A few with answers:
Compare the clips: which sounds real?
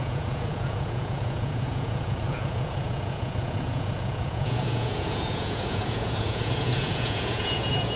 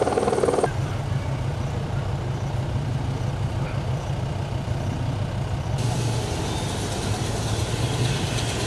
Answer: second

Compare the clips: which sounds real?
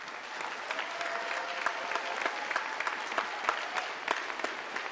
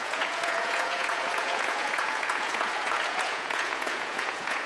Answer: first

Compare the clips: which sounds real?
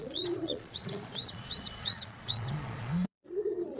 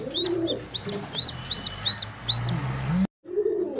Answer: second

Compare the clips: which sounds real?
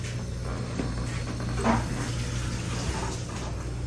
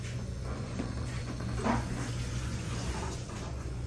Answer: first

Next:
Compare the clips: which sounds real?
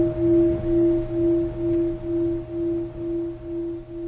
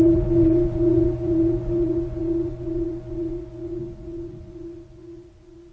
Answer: first